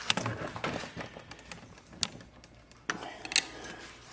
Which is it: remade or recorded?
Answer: recorded